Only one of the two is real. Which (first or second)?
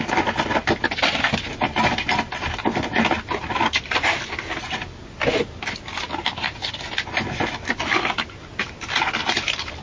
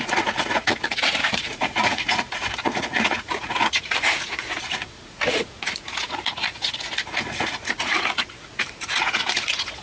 first